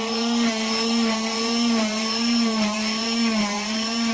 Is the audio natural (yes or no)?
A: no